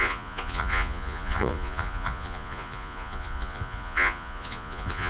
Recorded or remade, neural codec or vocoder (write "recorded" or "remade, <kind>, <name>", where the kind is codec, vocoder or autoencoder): remade, vocoder, Vocos